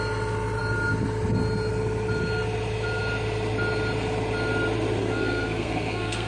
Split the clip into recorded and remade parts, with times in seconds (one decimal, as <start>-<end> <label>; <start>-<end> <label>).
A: 0.0-5.0 recorded; 5.0-6.3 remade